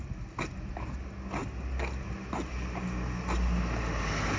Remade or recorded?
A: recorded